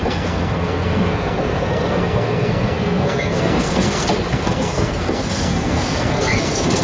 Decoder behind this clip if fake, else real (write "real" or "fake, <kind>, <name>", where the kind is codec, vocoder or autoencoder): fake, codec, SNAC